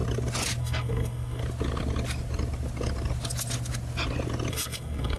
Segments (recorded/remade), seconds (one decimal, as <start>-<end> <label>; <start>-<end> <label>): 0.0-0.6 recorded; 0.6-1.4 remade; 1.4-4.5 recorded; 4.5-5.2 remade